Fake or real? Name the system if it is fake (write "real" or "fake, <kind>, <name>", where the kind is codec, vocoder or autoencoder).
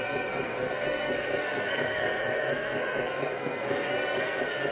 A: fake, codec, SNAC